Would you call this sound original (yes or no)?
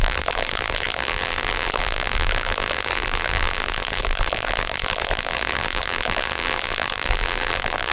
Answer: no